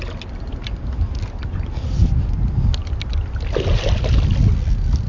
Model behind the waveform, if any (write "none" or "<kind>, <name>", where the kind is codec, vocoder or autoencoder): none